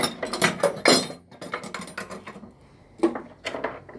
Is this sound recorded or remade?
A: recorded